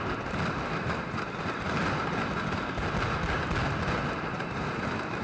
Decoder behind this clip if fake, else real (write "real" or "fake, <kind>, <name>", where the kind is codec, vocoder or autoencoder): real